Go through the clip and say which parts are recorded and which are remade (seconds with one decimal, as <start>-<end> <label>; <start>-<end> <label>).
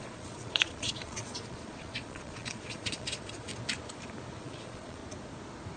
0.0-3.5 remade; 3.5-4.4 recorded; 4.4-5.0 remade; 5.0-5.8 recorded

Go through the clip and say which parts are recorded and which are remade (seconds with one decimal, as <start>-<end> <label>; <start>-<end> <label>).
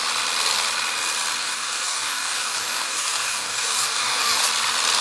0.0-1.4 recorded; 1.4-4.4 remade; 4.4-5.0 recorded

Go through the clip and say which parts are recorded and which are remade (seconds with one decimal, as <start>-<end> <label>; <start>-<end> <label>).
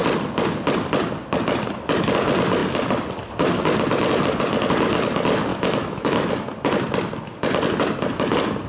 0.0-5.5 recorded; 5.5-6.3 remade; 6.3-8.7 recorded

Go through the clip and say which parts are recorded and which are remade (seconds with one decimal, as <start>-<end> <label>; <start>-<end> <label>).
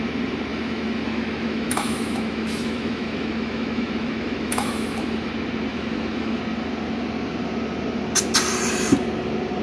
0.0-0.5 recorded; 0.5-5.3 remade; 5.3-5.7 recorded; 5.7-6.4 remade; 6.4-9.6 recorded